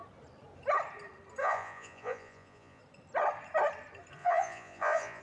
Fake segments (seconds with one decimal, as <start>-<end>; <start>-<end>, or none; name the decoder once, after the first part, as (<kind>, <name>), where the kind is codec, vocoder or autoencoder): 1.4-2.8 (vocoder, Vocos); 4.2-5.2